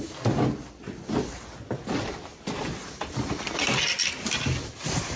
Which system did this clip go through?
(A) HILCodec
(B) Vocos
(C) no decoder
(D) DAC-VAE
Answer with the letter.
C